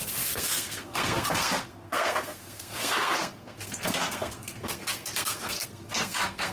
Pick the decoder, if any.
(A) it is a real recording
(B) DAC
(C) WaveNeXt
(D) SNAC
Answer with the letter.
D